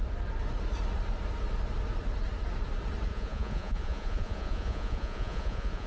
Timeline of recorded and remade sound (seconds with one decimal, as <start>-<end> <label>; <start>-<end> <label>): 0.0-3.1 recorded; 3.1-5.9 remade

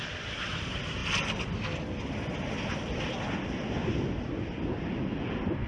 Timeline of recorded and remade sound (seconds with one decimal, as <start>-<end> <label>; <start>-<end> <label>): 0.0-5.7 recorded

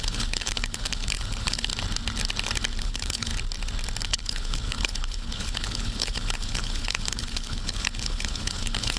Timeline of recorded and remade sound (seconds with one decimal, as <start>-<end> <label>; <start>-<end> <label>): 0.0-1.7 remade; 1.7-2.8 recorded; 2.8-3.3 remade; 3.3-4.0 recorded; 4.0-9.0 remade

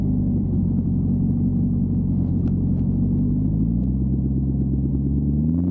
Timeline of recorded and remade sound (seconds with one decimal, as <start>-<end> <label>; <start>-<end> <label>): 0.0-5.7 recorded

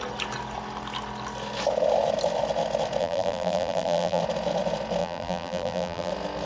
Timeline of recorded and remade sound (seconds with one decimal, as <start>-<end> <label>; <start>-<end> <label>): 0.0-3.0 recorded; 3.0-4.2 remade; 4.2-5.0 recorded; 5.0-6.1 remade; 6.1-6.5 recorded

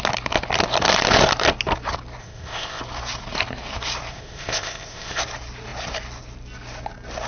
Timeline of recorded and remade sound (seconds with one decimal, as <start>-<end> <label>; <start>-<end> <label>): 0.0-2.2 recorded; 2.2-2.8 remade; 2.8-4.1 recorded; 4.1-5.2 remade; 5.2-7.3 recorded

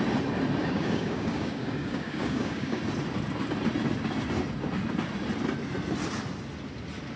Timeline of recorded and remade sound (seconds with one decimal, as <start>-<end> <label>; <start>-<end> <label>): 0.0-0.6 recorded; 0.6-2.8 remade; 2.8-7.2 recorded

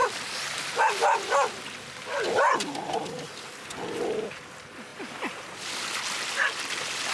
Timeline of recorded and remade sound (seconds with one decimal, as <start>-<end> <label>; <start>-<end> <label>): 0.0-7.1 recorded